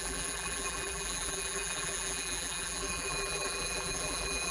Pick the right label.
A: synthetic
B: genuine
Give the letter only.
A